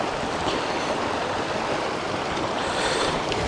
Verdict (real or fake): fake